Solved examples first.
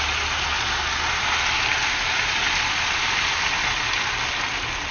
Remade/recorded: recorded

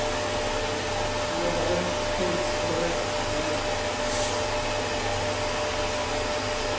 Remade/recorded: recorded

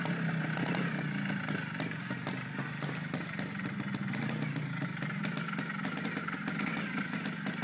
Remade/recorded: recorded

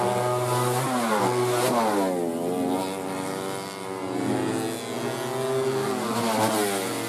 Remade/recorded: recorded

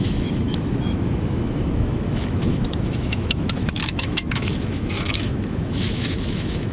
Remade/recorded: remade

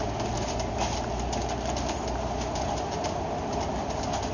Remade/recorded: recorded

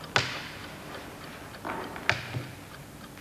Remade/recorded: recorded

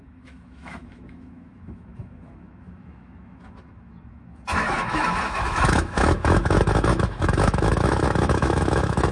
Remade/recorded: remade